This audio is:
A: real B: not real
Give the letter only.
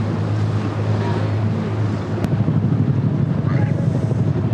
A